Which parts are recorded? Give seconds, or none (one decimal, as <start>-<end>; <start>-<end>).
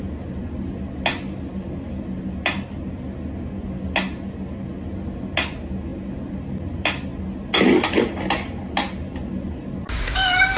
0.0-10.6